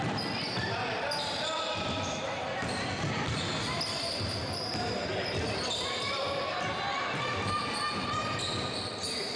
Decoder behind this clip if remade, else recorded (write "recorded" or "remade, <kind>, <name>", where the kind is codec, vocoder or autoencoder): remade, vocoder, BigVGAN v2